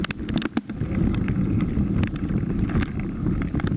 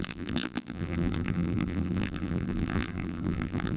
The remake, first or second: second